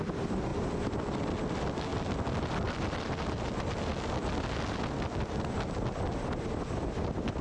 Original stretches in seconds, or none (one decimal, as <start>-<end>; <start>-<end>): 0.5-1.5; 1.9-2.5; 3.9-5.2